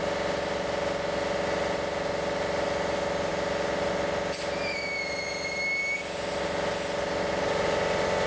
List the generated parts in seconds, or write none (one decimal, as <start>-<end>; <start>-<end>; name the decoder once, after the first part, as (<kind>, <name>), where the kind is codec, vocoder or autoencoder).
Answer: none